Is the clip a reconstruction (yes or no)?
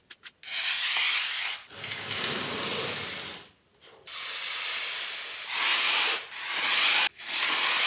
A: no